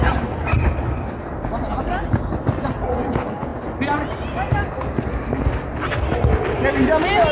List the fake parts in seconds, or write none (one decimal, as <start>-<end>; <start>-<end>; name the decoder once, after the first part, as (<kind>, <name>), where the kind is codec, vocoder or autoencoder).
none